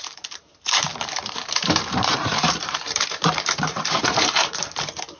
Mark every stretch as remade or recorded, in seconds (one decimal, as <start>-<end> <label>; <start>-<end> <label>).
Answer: 0.0-5.2 remade